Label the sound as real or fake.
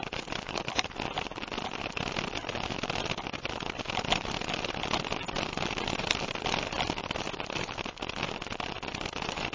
real